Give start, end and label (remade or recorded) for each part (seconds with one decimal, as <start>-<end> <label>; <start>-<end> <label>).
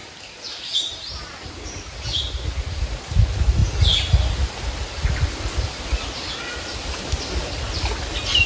0.0-8.5 recorded